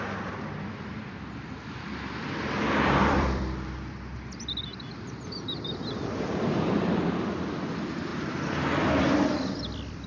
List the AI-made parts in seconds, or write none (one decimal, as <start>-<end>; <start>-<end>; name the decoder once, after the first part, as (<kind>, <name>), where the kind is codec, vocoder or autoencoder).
0.0-10.1 (vocoder, BigVGAN v2)